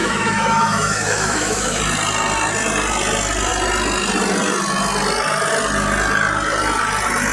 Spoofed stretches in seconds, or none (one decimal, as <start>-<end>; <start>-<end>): 0.0-1.8